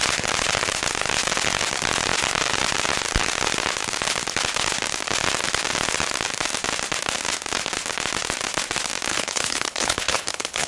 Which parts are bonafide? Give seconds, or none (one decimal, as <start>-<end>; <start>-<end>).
0.0-9.1